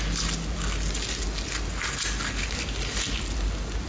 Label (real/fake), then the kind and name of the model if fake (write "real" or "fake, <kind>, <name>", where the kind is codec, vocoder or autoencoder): real